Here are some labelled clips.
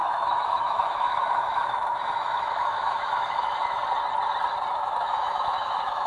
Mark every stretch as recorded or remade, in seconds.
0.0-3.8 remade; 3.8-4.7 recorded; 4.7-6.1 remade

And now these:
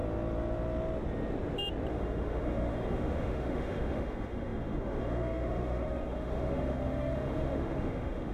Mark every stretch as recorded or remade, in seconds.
0.0-1.9 recorded; 1.9-8.3 remade